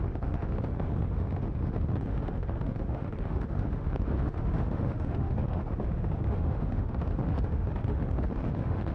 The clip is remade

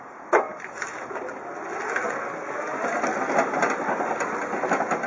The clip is recorded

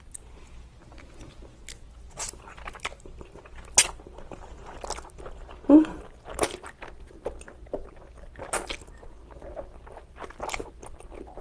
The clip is recorded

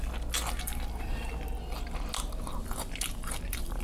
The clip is recorded